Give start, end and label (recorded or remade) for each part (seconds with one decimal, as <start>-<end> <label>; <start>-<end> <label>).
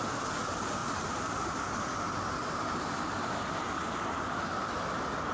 0.0-5.3 recorded